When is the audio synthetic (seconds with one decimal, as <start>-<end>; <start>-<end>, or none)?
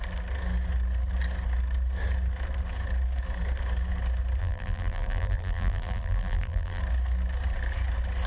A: 4.4-6.8